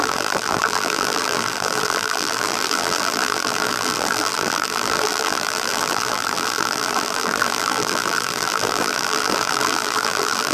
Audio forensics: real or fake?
fake